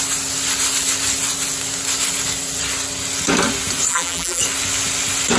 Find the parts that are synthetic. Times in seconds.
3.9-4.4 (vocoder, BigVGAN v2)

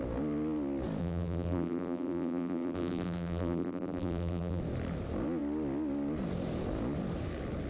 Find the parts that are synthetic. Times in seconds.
1.0-4.6 (vocoder, BigVGAN v2)

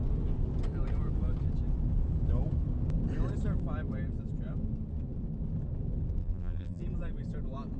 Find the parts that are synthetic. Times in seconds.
6.2-6.8 (vocoder, BigVGAN v2)

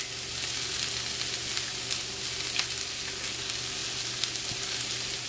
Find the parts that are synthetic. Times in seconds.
none

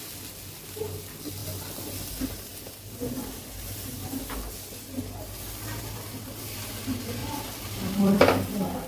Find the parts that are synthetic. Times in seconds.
7.2-8.9 (vocoder, BigVGAN v2)

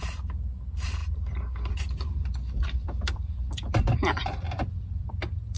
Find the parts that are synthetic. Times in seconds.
1.0-3.7 (vocoder, BigVGAN v2); 4.2-5.1

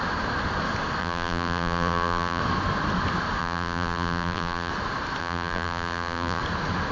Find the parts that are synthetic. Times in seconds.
1.0-2.4 (vocoder, BigVGAN v2); 3.4-4.7; 5.2-6.4

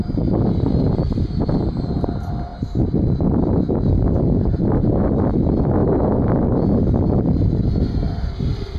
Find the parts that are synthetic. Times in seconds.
5.8-8.4 (vocoder, BigVGAN v2)